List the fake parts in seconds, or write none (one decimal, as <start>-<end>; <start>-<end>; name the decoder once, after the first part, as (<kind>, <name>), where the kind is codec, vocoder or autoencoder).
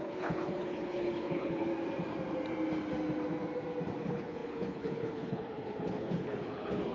0.0-1.7 (codec, HILCodec); 4.0-6.9